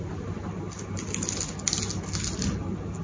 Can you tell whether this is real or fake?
real